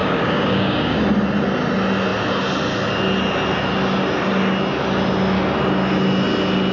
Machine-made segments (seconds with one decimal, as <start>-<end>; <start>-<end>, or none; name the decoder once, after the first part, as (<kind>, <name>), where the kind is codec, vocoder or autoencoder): 0.0-1.0 (codec, DAC)